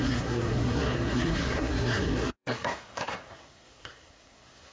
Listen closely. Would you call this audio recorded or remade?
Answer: remade